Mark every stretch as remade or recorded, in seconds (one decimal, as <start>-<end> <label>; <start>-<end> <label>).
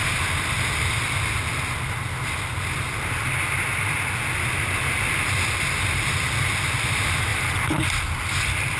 0.0-8.8 recorded